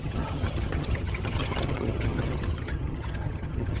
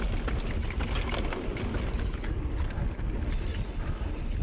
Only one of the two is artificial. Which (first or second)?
first